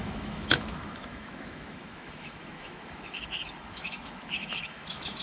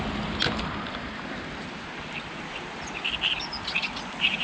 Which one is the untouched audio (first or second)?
second